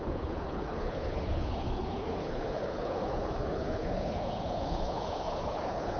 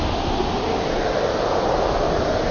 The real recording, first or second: second